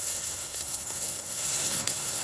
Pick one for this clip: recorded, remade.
remade